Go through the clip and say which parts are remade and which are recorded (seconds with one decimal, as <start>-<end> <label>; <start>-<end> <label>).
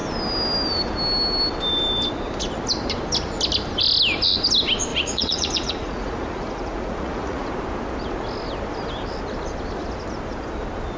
0.0-4.9 recorded; 4.9-7.5 remade; 7.5-11.0 recorded